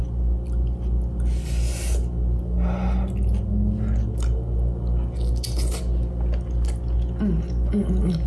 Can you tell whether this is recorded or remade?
recorded